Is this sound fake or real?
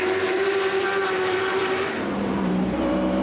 fake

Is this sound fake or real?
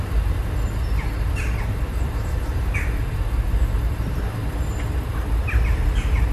real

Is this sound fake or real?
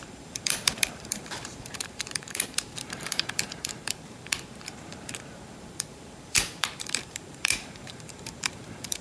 fake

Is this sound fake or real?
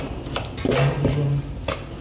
real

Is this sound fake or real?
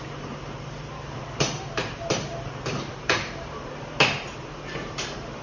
fake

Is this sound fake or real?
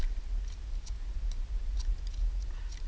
real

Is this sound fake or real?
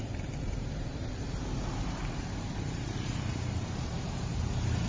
fake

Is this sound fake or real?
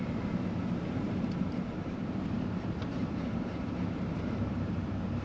fake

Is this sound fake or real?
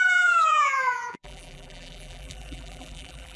fake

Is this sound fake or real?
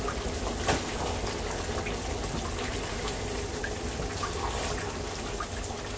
real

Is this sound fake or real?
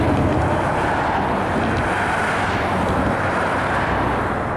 real